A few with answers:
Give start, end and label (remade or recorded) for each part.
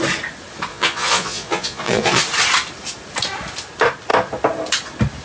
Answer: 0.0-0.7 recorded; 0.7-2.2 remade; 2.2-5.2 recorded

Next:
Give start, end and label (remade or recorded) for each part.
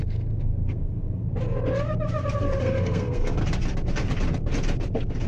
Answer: 0.0-1.3 remade; 1.3-2.6 recorded; 2.6-3.4 remade; 3.4-5.3 recorded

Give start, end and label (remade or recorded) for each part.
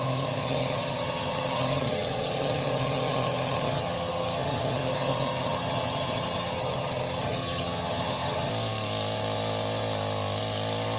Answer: 0.0-8.5 remade; 8.5-11.0 recorded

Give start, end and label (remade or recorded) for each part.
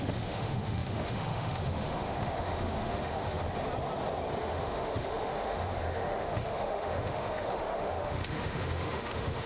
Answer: 0.0-3.4 remade; 3.4-4.4 recorded; 4.4-9.5 remade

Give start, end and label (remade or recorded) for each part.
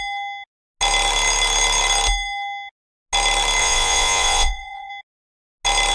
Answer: 0.0-3.6 recorded; 3.6-4.9 remade; 4.9-5.9 recorded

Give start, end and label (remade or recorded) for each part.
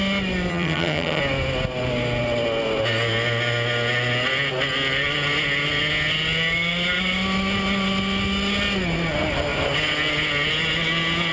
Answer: 0.0-0.5 recorded; 0.5-1.2 remade; 1.2-11.3 recorded